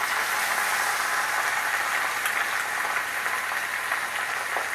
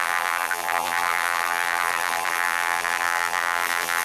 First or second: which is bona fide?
first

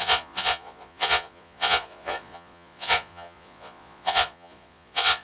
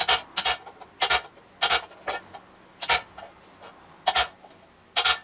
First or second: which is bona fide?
second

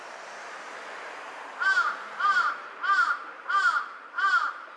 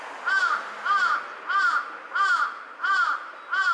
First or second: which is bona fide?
second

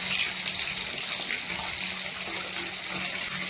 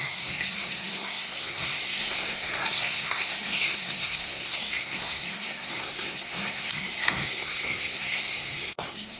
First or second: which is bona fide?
first